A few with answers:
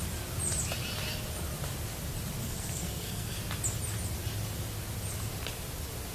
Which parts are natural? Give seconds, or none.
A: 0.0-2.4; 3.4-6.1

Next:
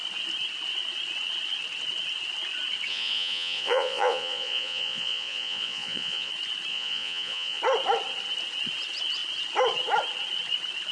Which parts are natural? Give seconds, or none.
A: 0.0-2.9; 6.3-6.7; 7.6-10.9